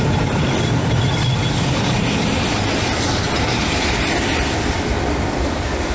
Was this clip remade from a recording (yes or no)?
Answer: no